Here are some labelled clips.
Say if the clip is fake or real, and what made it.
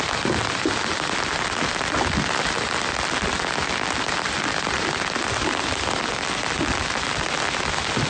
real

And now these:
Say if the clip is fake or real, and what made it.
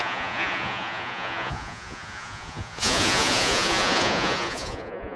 fake, vocoder, Vocos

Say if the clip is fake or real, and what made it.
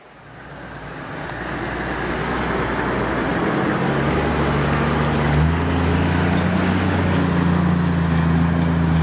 real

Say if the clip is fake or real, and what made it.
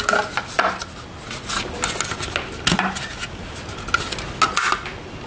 real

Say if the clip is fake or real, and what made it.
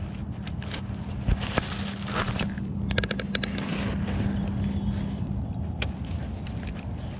real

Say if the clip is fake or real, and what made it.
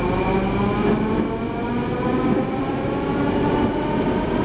real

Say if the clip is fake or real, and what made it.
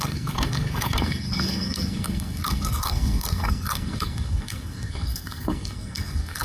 fake, codec, SNAC